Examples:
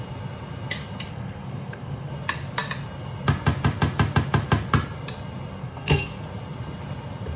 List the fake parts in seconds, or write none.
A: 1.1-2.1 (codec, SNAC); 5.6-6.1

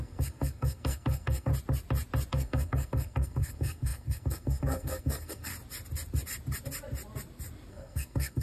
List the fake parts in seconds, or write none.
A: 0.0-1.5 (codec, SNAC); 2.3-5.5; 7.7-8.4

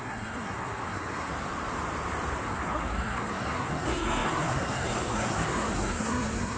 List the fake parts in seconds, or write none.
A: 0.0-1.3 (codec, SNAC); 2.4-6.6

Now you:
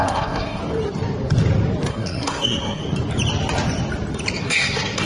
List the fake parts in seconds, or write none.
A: 0.0-0.6 (codec, SNAC); 1.9-2.8; 4.4-5.1